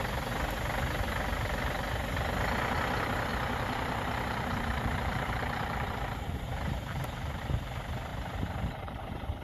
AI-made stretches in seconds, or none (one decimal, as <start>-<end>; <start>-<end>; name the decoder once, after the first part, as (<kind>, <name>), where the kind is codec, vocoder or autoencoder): 3.3-7.4 (vocoder, BigVGAN v2); 8.1-9.4